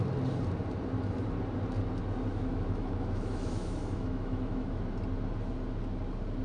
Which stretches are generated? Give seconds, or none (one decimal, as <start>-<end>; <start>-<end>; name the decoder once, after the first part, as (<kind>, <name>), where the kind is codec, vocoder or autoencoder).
2.3-4.8 (autoencoder, DAC-VAE)